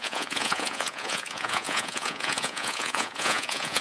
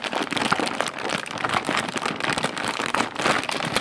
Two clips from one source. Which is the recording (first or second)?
second